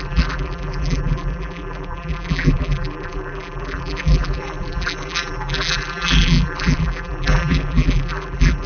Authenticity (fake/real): fake